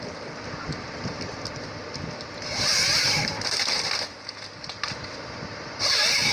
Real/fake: fake